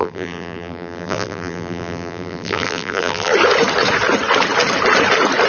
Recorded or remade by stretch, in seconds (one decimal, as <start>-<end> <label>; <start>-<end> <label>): 0.0-3.3 remade; 3.3-5.5 recorded